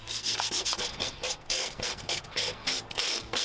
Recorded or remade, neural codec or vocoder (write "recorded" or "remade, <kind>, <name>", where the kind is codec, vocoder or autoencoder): remade, codec, SNAC